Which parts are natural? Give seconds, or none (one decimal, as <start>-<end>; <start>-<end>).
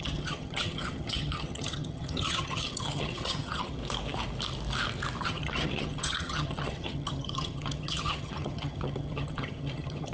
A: 3.8-5.2